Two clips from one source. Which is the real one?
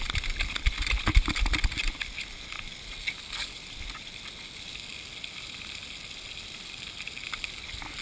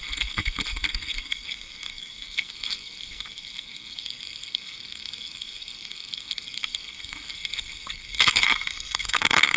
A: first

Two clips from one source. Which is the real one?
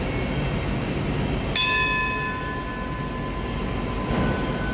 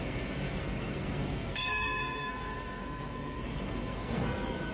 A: first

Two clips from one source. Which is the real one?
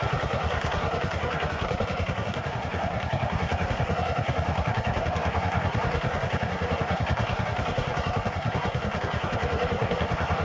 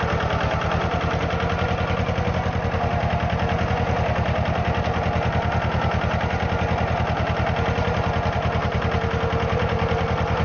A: second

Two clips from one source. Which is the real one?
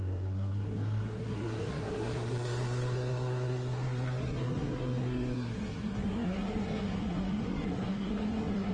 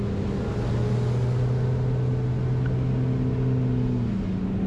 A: second